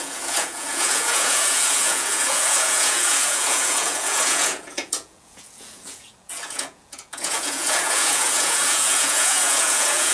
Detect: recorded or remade remade